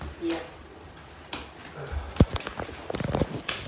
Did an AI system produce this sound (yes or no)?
no